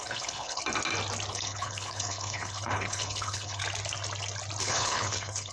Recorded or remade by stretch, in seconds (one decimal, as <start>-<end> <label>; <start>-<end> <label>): 0.0-0.6 remade; 0.6-1.3 recorded; 1.3-3.6 remade; 3.6-4.6 recorded; 4.6-5.5 remade